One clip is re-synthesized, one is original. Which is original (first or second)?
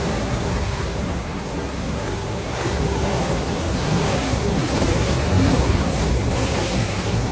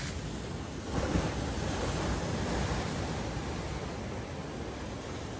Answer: second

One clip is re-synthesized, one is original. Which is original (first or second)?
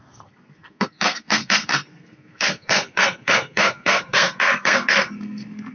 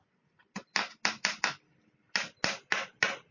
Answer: second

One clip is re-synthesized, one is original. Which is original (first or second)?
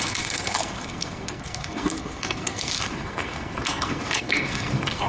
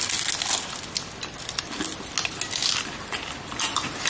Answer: second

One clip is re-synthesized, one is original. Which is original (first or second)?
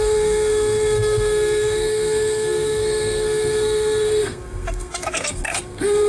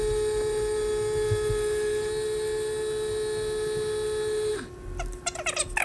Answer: second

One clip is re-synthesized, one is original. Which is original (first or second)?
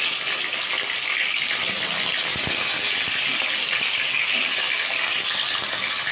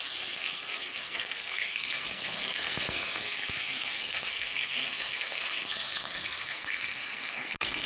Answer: first